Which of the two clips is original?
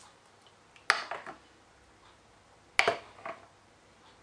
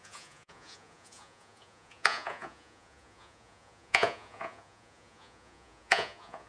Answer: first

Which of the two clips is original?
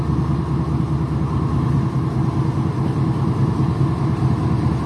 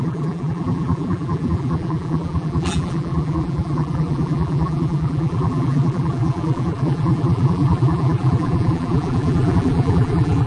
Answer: first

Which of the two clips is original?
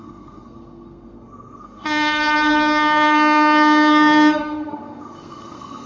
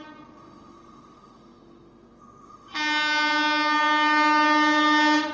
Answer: second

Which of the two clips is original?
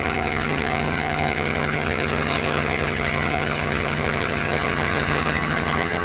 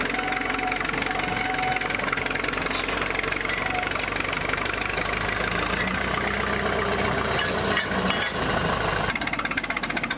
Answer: second